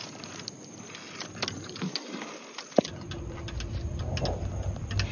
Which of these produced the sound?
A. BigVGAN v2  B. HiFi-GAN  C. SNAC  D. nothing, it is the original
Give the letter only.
D